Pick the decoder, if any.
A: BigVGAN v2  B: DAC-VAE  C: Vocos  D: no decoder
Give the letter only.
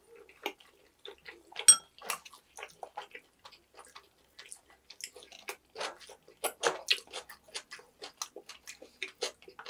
D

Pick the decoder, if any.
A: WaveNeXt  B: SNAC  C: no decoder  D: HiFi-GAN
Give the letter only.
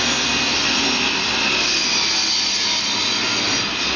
C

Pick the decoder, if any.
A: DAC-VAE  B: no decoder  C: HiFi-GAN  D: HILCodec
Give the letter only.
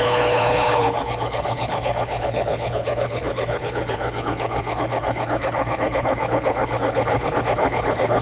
D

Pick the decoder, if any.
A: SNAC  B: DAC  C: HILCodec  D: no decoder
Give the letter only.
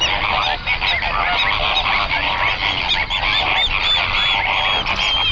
D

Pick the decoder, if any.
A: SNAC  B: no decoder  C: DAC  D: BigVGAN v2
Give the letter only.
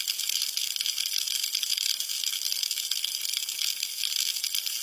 B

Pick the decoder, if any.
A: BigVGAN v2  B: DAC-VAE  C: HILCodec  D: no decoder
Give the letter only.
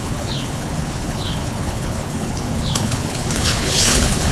C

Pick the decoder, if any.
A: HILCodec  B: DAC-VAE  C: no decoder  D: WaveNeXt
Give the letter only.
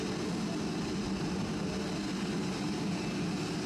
C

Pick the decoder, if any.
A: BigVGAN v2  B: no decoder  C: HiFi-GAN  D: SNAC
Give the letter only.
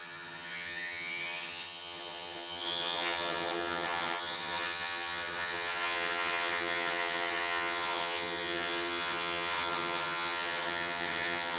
C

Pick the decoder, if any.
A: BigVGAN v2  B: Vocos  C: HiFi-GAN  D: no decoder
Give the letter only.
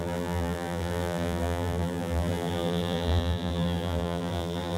A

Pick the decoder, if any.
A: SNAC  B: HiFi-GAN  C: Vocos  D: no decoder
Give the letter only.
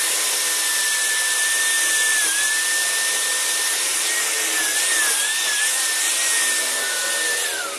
D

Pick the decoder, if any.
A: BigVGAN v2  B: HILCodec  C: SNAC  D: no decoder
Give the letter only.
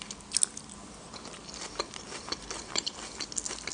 D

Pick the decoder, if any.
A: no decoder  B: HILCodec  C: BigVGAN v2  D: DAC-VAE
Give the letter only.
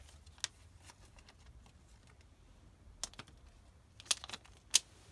A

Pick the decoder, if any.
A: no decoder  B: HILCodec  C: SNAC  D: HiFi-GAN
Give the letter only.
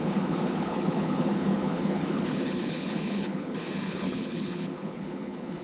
B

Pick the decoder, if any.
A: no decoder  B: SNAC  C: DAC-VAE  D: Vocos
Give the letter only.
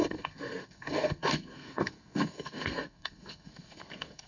B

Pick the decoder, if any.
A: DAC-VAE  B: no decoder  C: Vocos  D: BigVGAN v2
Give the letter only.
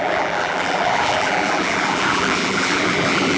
D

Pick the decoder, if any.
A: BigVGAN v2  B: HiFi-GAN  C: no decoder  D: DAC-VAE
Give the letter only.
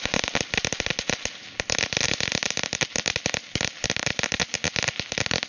C